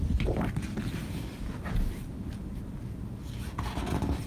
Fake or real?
real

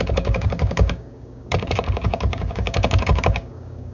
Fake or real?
fake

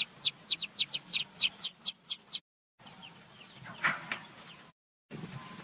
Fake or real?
real